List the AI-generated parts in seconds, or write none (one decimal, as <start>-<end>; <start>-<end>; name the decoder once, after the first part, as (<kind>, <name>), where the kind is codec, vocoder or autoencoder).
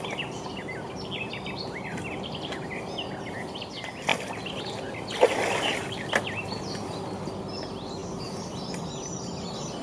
none